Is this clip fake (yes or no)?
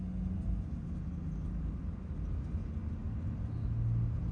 no